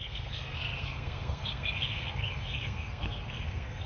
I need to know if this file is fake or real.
fake